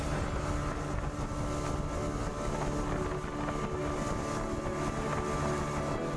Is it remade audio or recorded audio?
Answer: recorded